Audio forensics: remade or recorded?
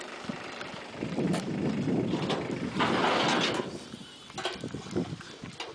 recorded